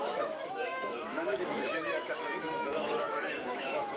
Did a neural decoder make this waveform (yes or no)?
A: yes